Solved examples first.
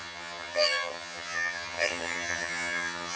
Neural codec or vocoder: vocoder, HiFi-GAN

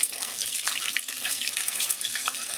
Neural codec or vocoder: codec, SNAC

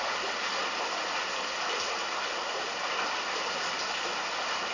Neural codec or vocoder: none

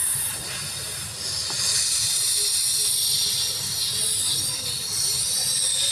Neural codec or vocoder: none